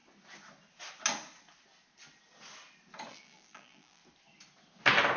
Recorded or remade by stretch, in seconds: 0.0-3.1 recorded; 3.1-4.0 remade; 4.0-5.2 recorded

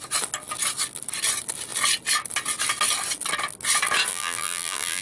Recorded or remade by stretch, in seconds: 0.0-4.1 recorded; 4.1-5.0 remade

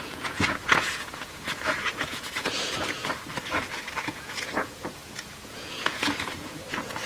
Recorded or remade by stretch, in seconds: 0.0-3.0 remade; 3.0-4.0 recorded; 4.0-7.1 remade

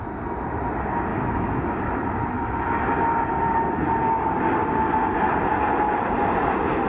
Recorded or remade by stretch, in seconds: 0.0-1.1 recorded; 1.1-1.6 remade; 1.6-6.9 recorded

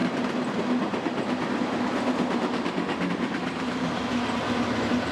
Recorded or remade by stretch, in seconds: 0.0-3.1 recorded; 3.1-4.0 remade; 4.0-5.1 recorded